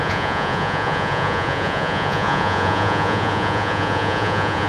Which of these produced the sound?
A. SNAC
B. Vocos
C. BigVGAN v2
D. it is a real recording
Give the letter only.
B